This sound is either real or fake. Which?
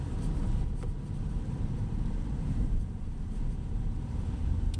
fake